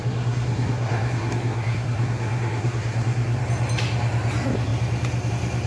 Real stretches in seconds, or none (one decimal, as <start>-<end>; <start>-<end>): 3.4-5.7